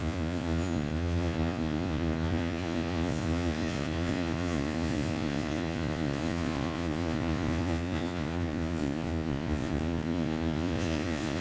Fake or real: fake